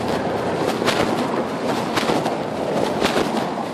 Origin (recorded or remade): recorded